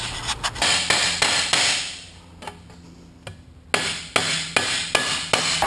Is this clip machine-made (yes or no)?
no